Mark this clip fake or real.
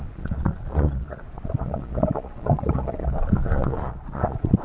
fake